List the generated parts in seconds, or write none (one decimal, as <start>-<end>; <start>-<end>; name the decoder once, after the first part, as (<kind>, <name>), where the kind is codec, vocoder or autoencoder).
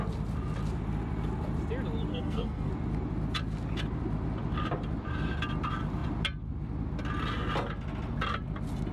2.1-2.7 (codec, SNAC)